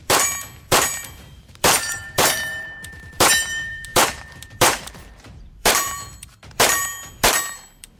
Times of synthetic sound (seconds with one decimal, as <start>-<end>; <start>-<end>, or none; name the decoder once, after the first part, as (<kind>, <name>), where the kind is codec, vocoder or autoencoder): 0.0-8.0 (vocoder, BigVGAN v2)